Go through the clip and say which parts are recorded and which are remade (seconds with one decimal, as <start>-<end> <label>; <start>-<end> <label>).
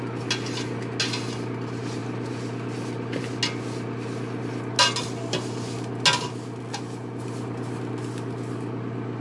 0.0-9.2 recorded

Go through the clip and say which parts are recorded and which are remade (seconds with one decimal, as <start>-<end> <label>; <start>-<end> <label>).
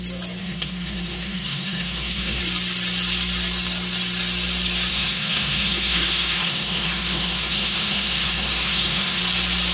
0.0-0.4 recorded; 0.4-2.4 remade; 2.4-4.9 recorded; 4.9-9.2 remade; 9.2-9.7 recorded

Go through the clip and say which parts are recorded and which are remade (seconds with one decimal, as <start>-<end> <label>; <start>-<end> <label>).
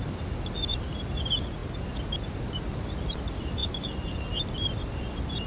0.0-5.5 recorded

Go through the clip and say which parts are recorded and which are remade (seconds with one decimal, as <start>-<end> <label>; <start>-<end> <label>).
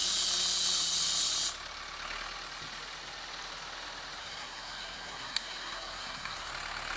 0.0-4.2 recorded; 4.2-6.5 remade; 6.5-7.0 recorded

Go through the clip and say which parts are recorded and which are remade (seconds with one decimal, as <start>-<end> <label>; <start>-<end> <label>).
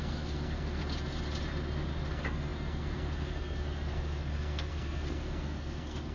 0.0-0.8 remade; 0.8-2.1 recorded; 2.1-6.1 remade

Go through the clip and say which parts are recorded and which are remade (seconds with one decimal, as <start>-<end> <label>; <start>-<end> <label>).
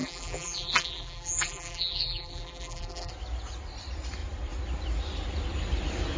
0.0-3.1 remade; 3.1-6.2 recorded